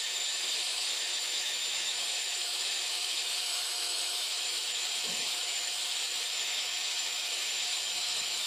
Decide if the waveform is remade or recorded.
remade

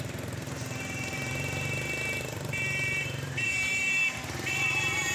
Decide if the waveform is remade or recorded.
remade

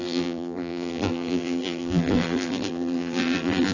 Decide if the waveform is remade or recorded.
remade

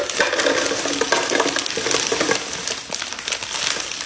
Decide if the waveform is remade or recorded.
recorded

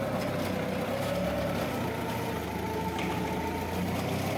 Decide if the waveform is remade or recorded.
recorded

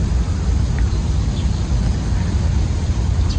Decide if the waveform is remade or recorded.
recorded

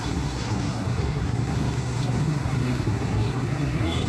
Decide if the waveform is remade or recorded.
remade